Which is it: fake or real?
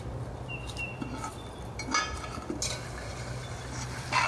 real